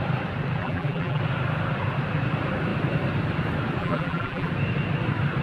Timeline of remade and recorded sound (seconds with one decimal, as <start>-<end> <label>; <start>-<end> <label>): 0.0-0.6 recorded; 0.6-1.2 remade; 1.2-3.8 recorded; 3.8-4.5 remade; 4.5-5.4 recorded